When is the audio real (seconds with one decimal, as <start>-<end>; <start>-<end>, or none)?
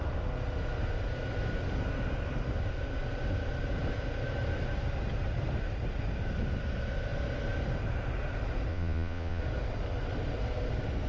0.0-8.7; 9.4-11.1